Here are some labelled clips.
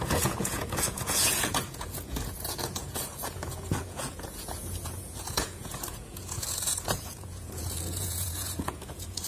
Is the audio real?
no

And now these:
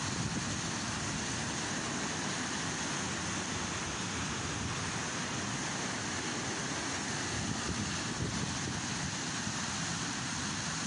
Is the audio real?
yes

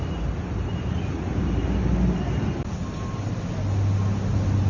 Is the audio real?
yes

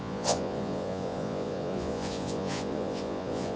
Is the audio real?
no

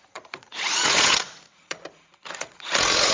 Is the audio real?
no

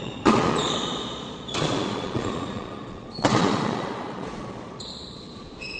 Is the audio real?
no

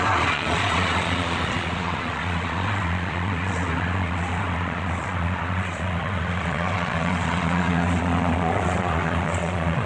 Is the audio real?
no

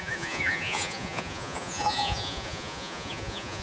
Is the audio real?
no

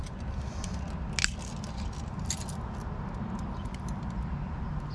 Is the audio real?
yes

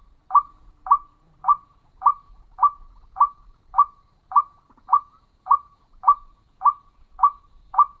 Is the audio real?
no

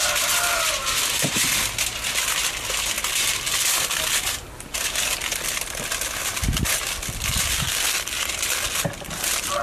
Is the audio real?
yes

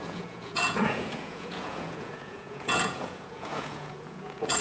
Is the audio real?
no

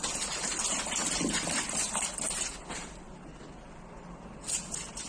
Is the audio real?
yes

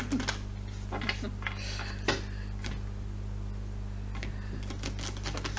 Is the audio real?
yes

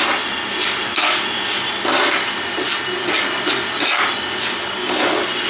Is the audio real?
yes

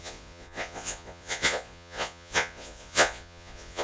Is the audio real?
no